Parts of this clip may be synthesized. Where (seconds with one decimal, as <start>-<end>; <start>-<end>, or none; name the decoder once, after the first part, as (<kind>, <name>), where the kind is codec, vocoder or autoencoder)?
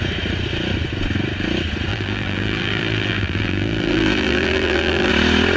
1.9-5.1 (vocoder, BigVGAN v2)